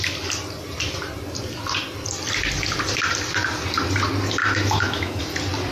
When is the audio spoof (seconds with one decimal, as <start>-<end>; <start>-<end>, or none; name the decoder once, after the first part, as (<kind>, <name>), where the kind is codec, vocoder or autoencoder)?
4.4-5.2 (autoencoder, DAC-VAE)